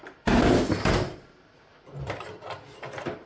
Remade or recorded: recorded